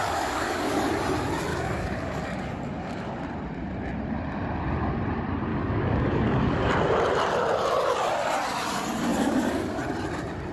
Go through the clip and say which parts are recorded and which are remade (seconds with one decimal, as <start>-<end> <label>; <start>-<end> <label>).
0.0-0.9 remade; 0.9-1.5 recorded; 1.5-3.2 remade; 3.2-5.5 recorded; 5.5-6.7 remade; 6.7-9.1 recorded; 9.1-9.8 remade; 9.8-10.5 recorded